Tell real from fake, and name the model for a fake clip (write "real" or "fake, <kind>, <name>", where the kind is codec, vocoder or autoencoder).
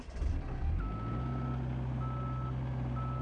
real